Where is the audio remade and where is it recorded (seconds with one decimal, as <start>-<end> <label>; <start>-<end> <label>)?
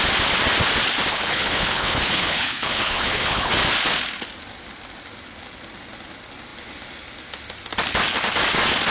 0.0-1.1 recorded; 1.1-3.5 remade; 3.5-8.9 recorded